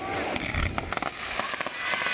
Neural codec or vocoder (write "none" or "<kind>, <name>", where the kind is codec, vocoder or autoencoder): none